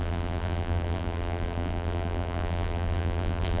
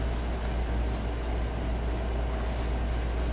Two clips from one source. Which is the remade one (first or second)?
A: first